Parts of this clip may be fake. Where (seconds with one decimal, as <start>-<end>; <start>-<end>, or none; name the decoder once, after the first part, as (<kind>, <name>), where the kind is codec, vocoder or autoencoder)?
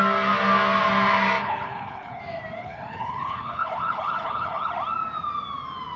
1.4-2.2 (codec, HILCodec); 2.6-4.7